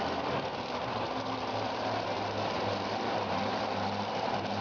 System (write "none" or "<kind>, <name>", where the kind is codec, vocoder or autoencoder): vocoder, BigVGAN v2